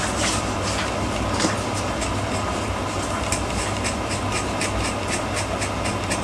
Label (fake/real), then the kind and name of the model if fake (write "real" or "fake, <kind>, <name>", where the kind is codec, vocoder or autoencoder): real